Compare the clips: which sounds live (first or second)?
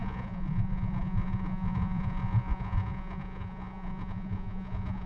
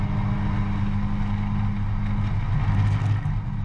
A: second